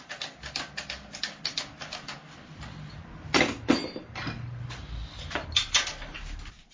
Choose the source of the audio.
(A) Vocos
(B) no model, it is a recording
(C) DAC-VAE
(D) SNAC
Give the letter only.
B